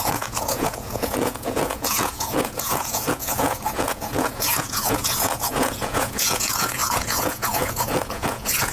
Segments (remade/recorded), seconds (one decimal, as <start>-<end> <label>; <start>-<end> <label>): 0.0-8.7 remade